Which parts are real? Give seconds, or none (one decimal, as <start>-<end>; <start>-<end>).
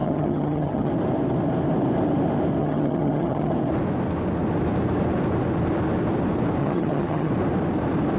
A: 0.9-2.6; 3.5-6.6; 7.3-8.2